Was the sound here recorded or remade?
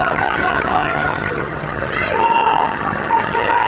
remade